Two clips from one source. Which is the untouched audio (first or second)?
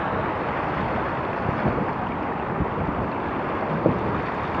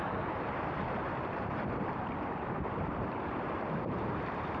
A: first